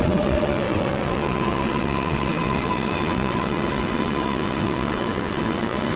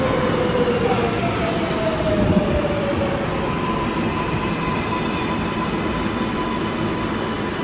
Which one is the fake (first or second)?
first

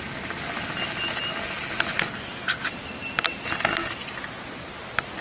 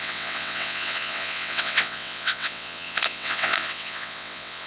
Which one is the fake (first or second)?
second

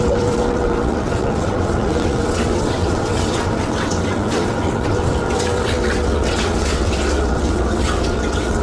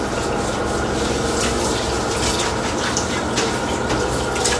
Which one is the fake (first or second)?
first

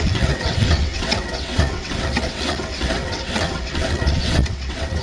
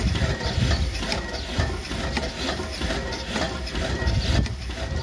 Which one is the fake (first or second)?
first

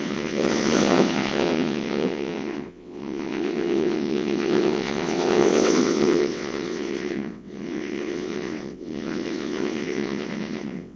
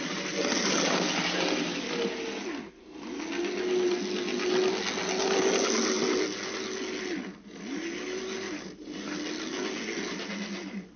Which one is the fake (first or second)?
first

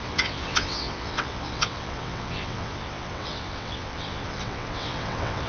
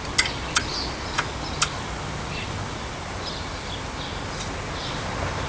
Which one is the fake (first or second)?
first